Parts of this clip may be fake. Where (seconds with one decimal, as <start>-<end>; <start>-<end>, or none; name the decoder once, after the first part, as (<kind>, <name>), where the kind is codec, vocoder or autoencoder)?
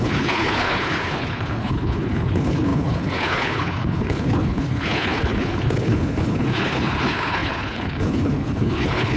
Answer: 0.0-9.2 (codec, HILCodec)